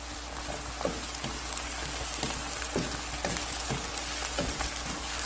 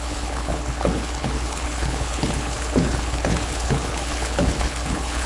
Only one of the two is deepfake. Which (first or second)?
second